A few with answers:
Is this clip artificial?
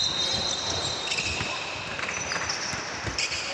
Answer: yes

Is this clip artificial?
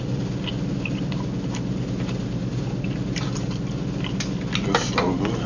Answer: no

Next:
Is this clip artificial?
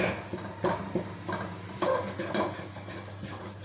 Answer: no